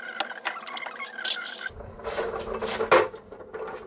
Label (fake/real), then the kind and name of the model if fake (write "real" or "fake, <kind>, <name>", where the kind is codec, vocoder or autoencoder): real